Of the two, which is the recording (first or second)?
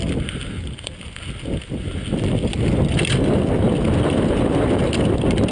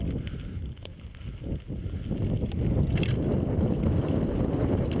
first